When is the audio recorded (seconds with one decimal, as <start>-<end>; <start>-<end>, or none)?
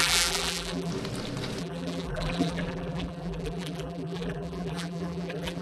0.9-1.6